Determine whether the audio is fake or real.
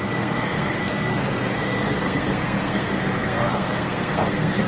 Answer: fake